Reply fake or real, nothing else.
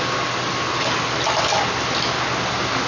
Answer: real